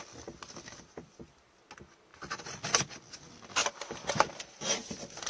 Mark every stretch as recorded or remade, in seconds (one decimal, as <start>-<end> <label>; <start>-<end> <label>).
0.0-5.3 recorded